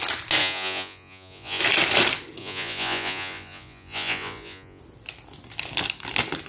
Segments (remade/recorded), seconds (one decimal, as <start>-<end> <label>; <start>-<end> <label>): 0.0-0.4 recorded; 0.4-1.6 remade; 1.6-2.4 recorded; 2.4-4.8 remade; 4.8-6.5 recorded